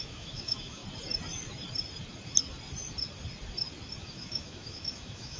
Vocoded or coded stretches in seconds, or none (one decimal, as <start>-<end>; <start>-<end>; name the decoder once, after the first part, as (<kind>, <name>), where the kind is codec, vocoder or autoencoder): 0.0-0.8 (autoencoder, DAC-VAE); 4.0-5.4